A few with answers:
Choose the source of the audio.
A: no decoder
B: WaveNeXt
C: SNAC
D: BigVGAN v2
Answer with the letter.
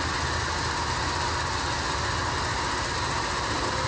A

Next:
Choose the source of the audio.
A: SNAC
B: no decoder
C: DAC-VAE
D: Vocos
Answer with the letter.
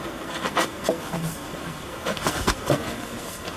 A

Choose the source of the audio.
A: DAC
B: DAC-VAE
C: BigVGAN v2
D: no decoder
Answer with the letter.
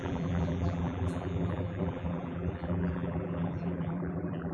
C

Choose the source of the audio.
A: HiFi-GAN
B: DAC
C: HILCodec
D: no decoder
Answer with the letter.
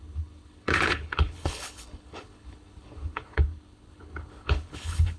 C